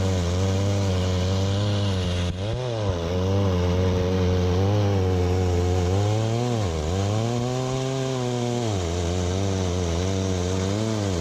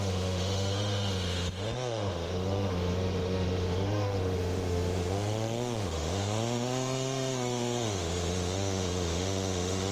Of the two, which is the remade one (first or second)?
second